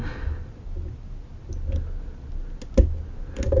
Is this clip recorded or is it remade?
recorded